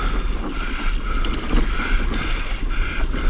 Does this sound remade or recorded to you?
recorded